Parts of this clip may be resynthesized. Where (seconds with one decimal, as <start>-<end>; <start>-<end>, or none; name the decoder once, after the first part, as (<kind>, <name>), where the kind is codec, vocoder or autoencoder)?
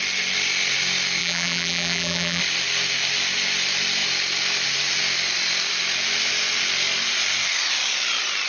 1.2-2.4 (vocoder, BigVGAN v2)